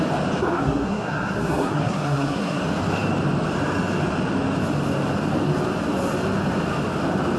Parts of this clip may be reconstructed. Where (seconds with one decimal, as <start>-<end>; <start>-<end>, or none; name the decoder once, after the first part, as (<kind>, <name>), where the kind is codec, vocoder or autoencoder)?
0.5-2.6 (codec, SNAC)